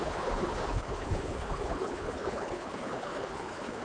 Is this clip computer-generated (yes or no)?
yes